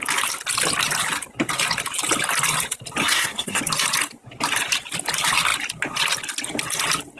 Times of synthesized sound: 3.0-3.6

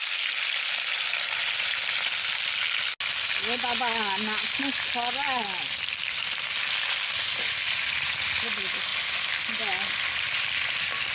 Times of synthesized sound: none

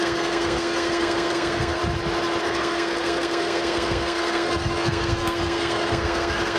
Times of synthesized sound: 0.0-1.8; 2.4-6.6

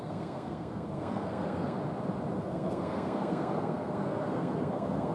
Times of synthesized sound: 0.0-1.8; 2.4-5.1

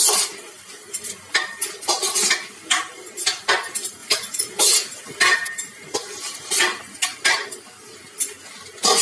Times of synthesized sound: none